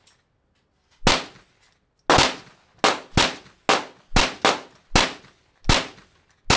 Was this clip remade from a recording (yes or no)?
no